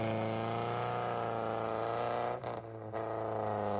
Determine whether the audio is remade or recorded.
recorded